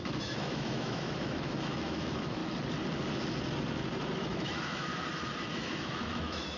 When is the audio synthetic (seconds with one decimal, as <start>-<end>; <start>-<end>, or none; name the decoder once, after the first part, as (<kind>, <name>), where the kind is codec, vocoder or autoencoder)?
0.0-2.4 (autoencoder, DAC-VAE); 4.2-4.9; 5.5-6.6